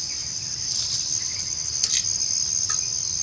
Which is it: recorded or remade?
recorded